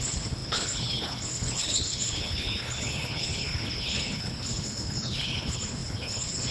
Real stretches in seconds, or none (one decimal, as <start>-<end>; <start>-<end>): none